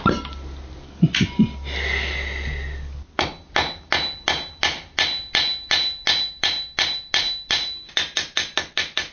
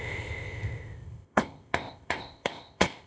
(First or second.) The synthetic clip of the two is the second